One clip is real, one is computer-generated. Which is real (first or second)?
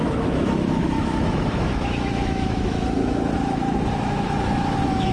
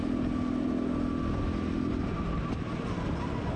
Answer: second